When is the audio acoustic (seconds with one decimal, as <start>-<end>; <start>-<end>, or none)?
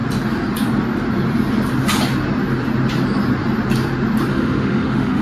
0.0-4.3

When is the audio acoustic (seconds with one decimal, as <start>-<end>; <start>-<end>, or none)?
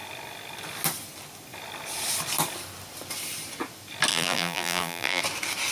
0.0-4.1; 5.2-5.7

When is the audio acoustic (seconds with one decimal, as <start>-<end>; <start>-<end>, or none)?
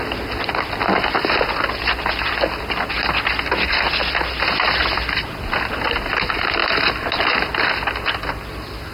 0.0-8.9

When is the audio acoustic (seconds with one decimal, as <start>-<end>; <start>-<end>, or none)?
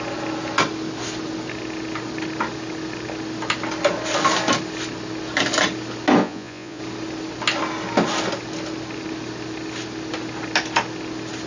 0.0-6.2; 6.8-11.5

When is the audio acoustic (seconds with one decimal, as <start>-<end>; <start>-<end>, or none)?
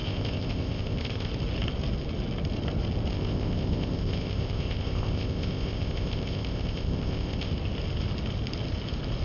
1.3-3.1; 7.5-9.2